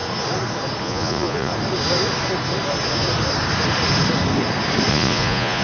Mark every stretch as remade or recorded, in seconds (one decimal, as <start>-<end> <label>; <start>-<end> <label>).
0.0-0.8 recorded; 0.8-1.5 remade; 1.5-4.9 recorded; 4.9-5.6 remade